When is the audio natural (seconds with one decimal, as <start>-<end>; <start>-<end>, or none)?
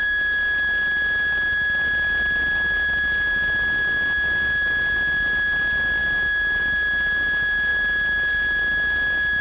0.0-9.4